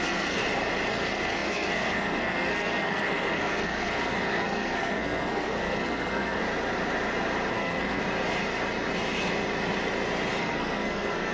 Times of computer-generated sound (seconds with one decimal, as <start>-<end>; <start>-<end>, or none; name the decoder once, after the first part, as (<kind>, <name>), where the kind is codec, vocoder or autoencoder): 0.0-0.4 (codec, SNAC); 0.9-6.4; 7.5-8.0; 10.4-11.3